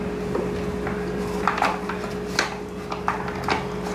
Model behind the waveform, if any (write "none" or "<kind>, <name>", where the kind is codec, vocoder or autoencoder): none